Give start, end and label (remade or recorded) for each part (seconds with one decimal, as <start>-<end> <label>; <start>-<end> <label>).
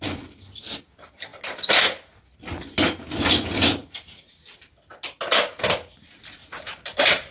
0.0-6.4 recorded; 6.4-7.3 remade